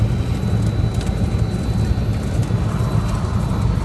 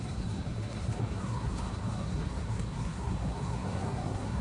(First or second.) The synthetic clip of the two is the second